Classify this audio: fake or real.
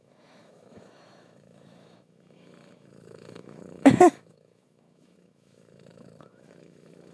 fake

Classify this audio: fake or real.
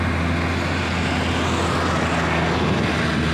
real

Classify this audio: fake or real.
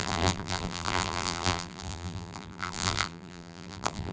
fake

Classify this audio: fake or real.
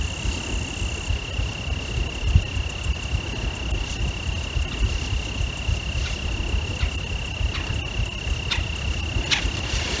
real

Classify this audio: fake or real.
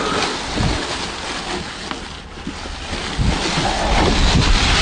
real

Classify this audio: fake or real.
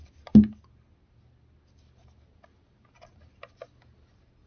real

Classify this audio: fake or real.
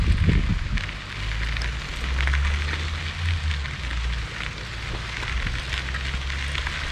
real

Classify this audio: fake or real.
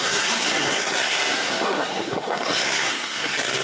fake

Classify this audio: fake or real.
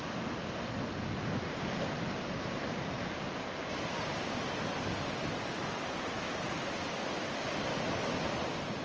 real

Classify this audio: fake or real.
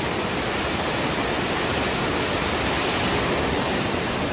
real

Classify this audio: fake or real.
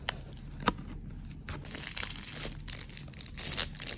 real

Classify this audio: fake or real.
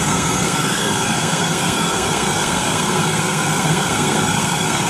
fake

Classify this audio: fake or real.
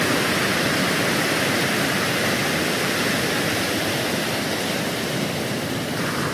real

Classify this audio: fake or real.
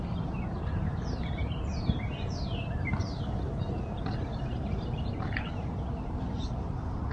fake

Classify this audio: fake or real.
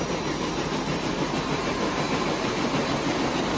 real